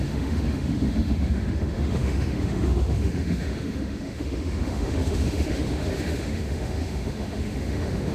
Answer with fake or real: fake